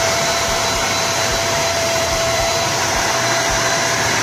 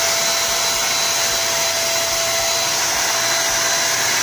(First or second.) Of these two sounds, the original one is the second